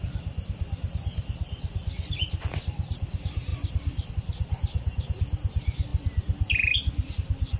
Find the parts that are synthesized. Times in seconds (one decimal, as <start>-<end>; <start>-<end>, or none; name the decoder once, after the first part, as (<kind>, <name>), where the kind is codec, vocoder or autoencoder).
none